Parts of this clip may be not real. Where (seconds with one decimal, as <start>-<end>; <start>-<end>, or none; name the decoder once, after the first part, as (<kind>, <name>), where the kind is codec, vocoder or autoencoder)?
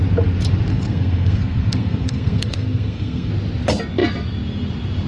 0.7-3.3 (codec, SNAC)